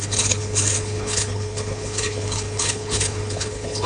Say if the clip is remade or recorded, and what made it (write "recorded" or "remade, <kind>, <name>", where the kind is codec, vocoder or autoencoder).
remade, codec, HILCodec